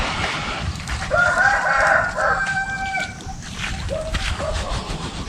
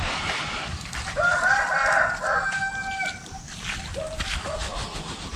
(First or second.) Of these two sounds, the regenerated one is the first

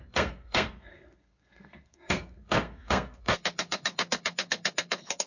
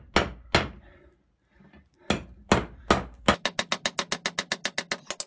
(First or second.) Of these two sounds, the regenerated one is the first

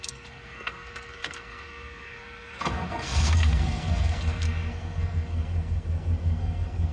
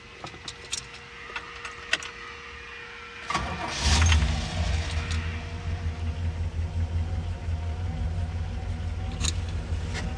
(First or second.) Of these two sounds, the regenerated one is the first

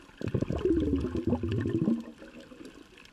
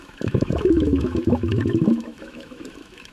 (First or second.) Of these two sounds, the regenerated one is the second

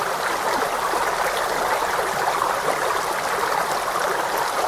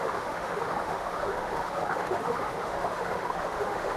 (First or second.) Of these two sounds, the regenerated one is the second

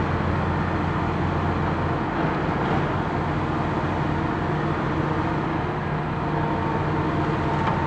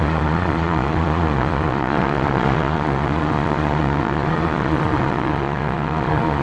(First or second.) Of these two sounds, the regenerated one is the second